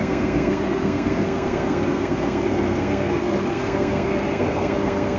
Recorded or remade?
remade